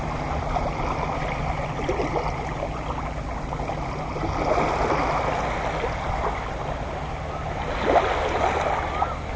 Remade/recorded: recorded